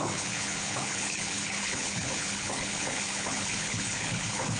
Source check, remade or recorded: remade